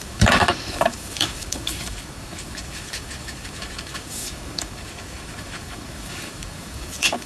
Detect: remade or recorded remade